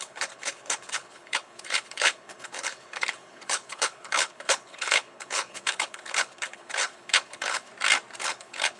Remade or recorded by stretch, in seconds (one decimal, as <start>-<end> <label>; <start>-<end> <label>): 0.0-7.7 remade; 7.7-8.2 recorded; 8.2-8.8 remade